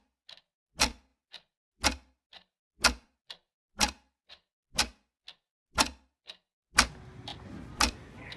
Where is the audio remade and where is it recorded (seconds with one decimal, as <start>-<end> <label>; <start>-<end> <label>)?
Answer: 0.0-8.4 recorded